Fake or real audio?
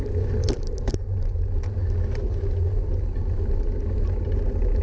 real